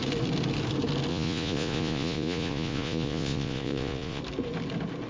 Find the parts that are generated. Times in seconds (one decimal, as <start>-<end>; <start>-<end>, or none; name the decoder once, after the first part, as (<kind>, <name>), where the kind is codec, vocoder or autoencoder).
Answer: 1.1-4.2 (vocoder, Vocos)